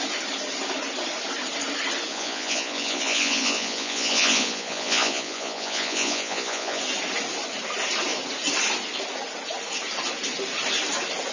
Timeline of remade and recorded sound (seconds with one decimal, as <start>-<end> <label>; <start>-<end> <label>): 0.0-2.1 recorded; 2.1-6.8 remade; 6.8-11.3 recorded